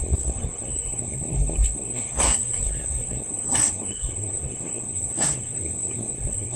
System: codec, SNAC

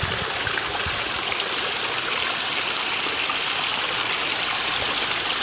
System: vocoder, BigVGAN v2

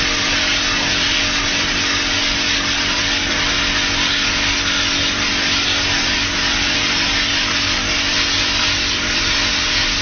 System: none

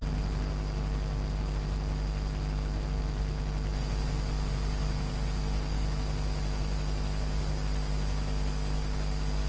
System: none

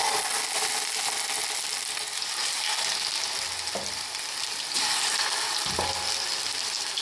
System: none